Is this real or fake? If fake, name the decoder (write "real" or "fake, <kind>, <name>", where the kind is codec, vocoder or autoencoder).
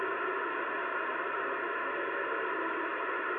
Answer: real